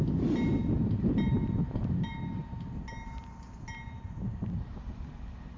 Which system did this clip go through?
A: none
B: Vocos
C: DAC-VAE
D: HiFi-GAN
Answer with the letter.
A